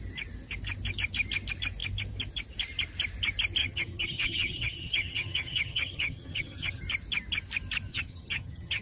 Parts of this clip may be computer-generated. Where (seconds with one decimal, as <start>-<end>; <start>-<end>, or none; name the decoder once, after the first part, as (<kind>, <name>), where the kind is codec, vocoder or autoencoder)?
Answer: 3.6-6.8 (vocoder, HiFi-GAN); 7.9-8.8